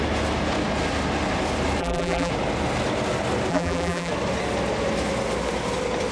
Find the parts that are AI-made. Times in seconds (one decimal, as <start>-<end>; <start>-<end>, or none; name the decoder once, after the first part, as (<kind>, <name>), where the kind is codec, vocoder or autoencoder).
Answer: 1.8-2.3 (vocoder, BigVGAN v2); 3.5-4.1